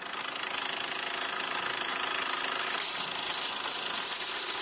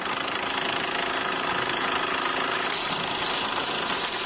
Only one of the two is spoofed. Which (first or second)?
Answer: second